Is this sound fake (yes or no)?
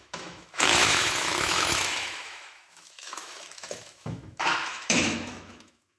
yes